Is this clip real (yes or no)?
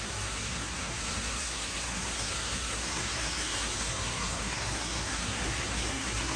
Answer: no